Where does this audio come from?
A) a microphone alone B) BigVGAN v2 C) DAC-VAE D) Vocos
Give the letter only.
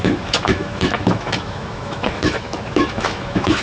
C